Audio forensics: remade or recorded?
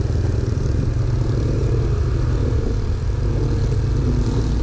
recorded